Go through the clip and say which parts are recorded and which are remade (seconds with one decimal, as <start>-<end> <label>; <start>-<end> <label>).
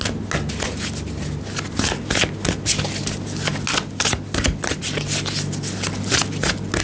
0.0-6.8 recorded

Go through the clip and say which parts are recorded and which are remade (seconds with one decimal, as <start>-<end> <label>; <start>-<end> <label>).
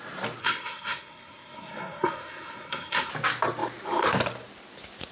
0.0-0.4 recorded; 0.4-3.1 remade; 3.1-5.1 recorded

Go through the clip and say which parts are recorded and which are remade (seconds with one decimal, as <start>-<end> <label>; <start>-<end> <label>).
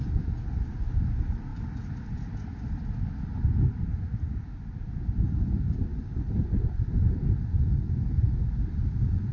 0.0-9.3 recorded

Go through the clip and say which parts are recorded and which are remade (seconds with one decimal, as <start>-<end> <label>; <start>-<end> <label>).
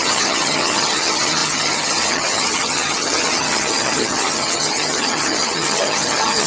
0.0-6.5 remade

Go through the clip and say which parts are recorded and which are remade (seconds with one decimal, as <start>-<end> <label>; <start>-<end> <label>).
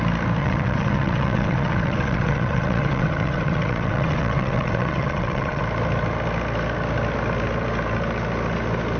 0.0-0.4 recorded; 0.4-5.6 remade; 5.6-9.0 recorded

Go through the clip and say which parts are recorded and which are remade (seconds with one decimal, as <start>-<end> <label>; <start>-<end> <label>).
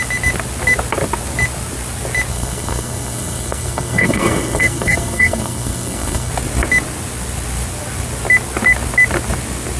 0.0-2.3 recorded; 2.3-6.3 remade; 6.3-9.8 recorded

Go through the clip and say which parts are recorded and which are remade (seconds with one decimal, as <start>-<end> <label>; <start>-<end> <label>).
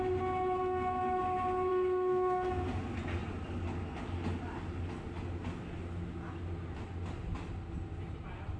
0.0-1.7 recorded; 1.7-2.5 remade; 2.5-8.6 recorded